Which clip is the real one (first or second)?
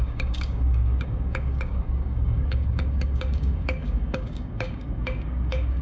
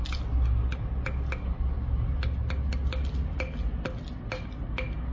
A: second